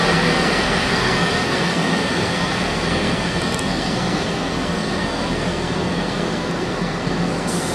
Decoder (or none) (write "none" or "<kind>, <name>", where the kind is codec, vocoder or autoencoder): codec, SNAC